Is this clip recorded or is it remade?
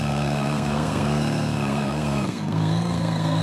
remade